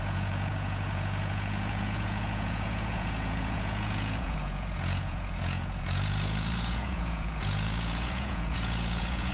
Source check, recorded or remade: remade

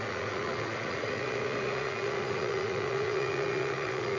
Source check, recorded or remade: remade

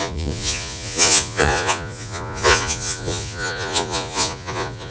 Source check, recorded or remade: remade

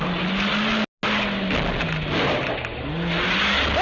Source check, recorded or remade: recorded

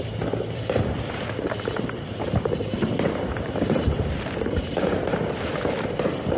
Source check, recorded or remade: remade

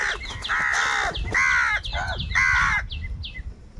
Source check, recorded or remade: recorded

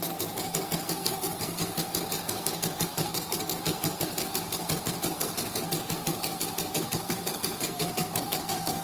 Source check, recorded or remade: remade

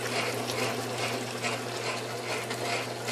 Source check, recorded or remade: recorded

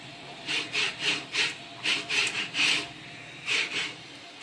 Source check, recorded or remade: remade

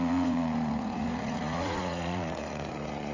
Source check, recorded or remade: remade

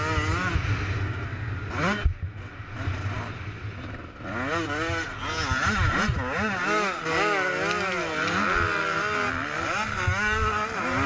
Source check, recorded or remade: recorded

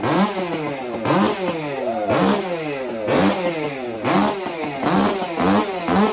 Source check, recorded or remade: recorded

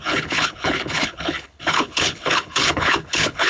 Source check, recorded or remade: remade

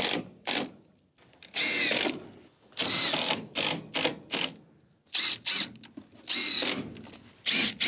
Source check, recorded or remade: recorded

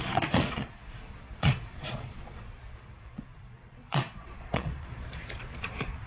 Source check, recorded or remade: remade